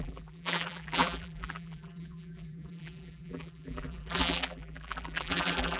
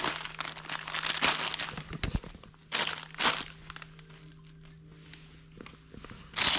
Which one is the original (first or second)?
second